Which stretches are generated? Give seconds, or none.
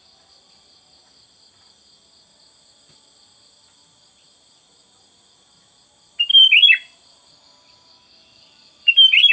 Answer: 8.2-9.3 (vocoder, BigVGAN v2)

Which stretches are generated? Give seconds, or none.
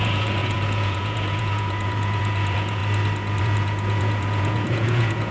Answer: 0.0-2.8 (vocoder, Vocos); 3.4-5.3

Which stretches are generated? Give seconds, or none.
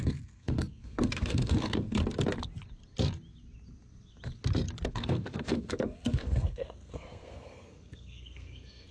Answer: 0.0-2.0 (codec, SNAC); 4.9-8.9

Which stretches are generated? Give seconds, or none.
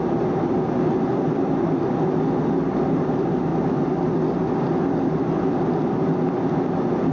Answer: none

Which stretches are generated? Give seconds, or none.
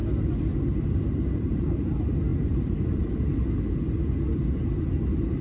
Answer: 0.9-3.4 (vocoder, BigVGAN v2); 5.0-5.4